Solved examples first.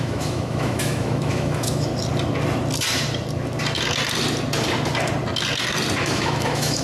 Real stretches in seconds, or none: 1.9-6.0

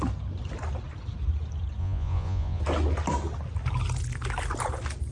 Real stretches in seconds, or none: 0.0-1.8; 2.6-5.1

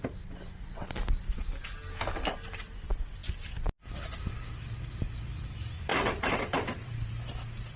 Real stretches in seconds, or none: 0.0-5.9; 6.9-7.8

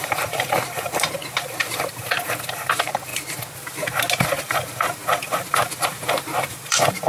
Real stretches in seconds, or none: 1.2-2.7; 3.1-4.4; 5.0-6.5

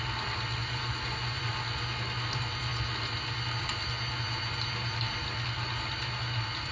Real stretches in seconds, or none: 0.0-0.6; 1.4-6.7

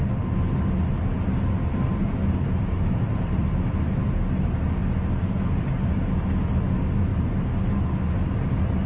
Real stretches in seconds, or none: 0.0-2.2; 3.5-7.1; 7.6-8.9

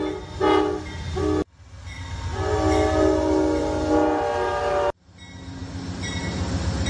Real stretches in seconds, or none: 0.0-6.9